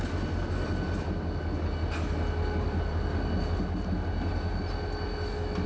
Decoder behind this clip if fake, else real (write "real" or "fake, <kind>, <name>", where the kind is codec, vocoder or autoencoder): real